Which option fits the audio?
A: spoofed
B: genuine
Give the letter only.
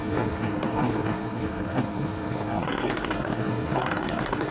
A